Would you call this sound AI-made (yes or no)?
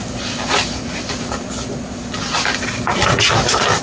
no